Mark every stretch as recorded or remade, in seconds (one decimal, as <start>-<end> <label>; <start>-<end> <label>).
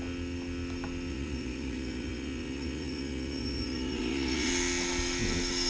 0.0-1.1 recorded; 1.1-4.5 remade; 4.5-5.7 recorded